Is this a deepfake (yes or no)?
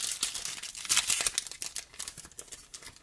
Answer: no